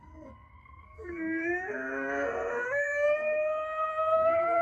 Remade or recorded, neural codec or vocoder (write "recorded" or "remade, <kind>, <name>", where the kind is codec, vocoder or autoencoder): remade, codec, SNAC